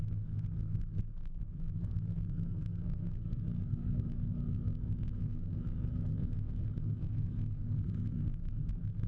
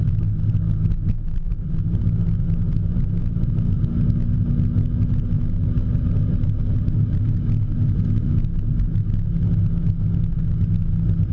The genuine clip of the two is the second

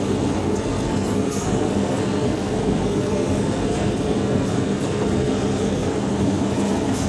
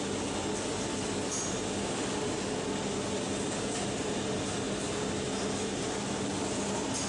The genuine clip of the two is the second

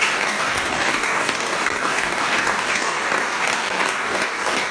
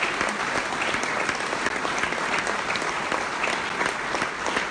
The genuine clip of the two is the second